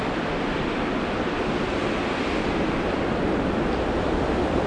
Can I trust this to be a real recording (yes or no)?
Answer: no